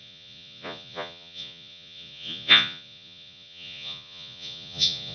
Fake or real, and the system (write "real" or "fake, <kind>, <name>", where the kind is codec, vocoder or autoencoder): fake, vocoder, Vocos